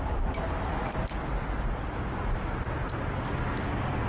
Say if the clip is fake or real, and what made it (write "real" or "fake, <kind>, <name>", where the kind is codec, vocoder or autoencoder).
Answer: real